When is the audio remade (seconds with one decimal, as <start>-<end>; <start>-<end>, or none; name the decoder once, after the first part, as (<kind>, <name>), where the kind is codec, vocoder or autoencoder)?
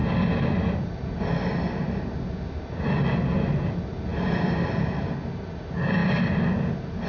none